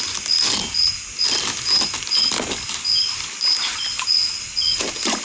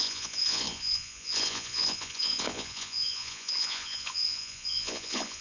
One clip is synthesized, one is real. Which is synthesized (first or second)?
second